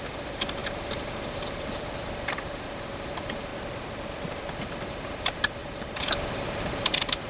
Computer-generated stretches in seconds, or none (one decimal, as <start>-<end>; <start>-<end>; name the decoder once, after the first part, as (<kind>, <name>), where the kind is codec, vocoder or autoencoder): 0.0-3.5 (vocoder, BigVGAN v2); 4.6-7.3